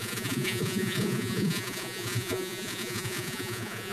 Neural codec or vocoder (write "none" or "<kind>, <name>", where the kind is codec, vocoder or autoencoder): vocoder, Vocos